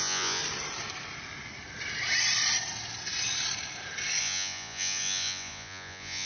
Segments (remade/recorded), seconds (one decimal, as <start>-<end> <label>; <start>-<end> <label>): 0.0-0.4 remade; 0.4-4.2 recorded; 4.2-6.3 remade